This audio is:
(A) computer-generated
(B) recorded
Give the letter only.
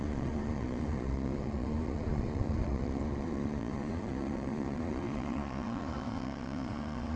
A